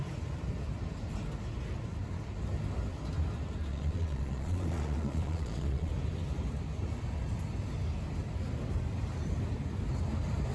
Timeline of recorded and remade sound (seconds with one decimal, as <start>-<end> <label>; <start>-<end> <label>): 0.0-3.7 recorded; 3.7-5.9 remade; 5.9-10.5 recorded